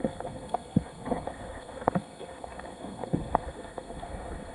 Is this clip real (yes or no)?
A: no